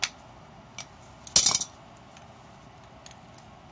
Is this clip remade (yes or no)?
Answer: no